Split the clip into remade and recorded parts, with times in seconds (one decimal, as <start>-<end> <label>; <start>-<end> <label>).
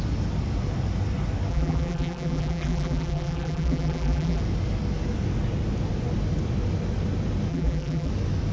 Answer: 0.0-1.5 recorded; 1.5-4.4 remade; 4.4-7.5 recorded; 7.5-8.1 remade; 8.1-8.5 recorded